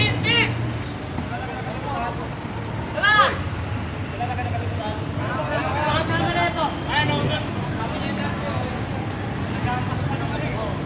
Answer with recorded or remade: recorded